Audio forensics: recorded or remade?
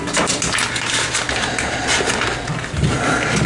recorded